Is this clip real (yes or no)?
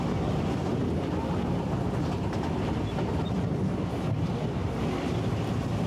yes